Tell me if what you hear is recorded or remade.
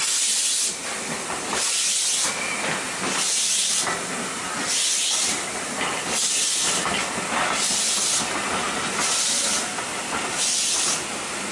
recorded